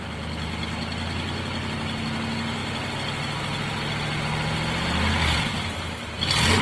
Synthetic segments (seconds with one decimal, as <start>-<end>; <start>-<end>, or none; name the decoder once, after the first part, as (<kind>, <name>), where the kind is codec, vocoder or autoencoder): none